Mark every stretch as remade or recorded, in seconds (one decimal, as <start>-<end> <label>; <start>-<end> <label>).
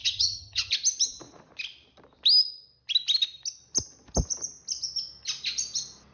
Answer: 0.0-0.7 remade; 0.7-6.1 recorded